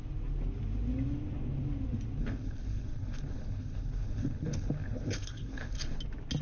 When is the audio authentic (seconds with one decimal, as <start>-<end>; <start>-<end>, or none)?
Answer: 0.0-2.2; 6.0-6.4